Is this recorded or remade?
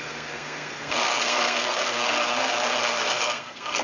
remade